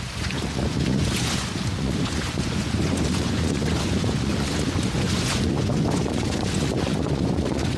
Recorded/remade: remade